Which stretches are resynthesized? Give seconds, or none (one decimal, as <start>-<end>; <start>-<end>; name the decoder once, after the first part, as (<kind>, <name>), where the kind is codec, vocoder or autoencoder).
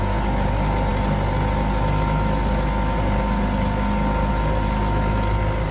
none